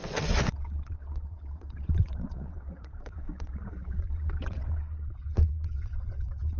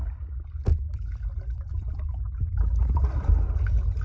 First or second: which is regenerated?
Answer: first